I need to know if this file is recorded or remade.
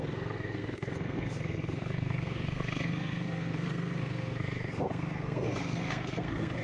remade